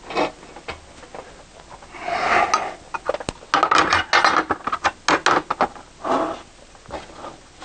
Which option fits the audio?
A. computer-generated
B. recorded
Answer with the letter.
B